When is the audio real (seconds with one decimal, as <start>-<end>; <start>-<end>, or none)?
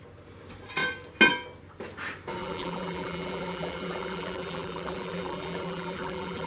0.0-2.4